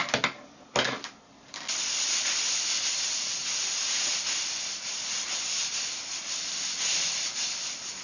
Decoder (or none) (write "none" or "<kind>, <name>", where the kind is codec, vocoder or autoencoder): none